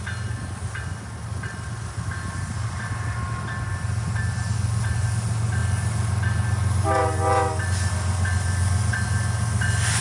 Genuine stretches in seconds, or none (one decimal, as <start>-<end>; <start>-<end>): 0.0-10.0